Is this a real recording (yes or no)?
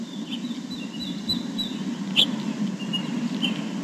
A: yes